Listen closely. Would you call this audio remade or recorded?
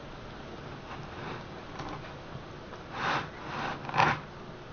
recorded